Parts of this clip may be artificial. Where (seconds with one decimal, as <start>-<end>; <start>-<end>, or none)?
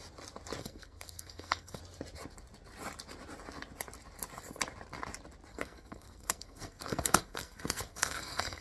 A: 0.6-1.8; 5.5-8.6